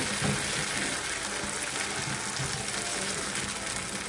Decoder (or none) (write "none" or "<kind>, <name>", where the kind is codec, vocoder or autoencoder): none